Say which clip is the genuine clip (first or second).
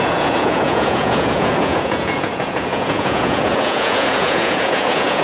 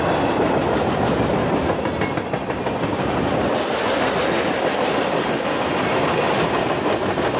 second